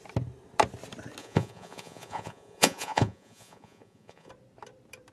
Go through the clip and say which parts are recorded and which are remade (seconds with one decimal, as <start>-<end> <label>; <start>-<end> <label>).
0.0-1.2 recorded; 1.2-4.3 remade; 4.3-5.1 recorded